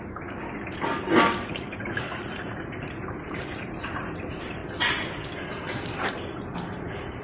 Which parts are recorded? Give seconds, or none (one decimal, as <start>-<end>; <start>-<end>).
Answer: 4.6-5.5